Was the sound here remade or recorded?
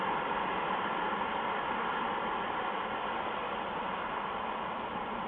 remade